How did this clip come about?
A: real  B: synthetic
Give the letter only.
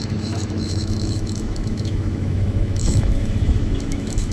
B